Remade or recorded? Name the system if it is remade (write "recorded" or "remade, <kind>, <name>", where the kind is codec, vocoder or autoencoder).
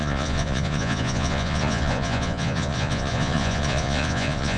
remade, vocoder, Vocos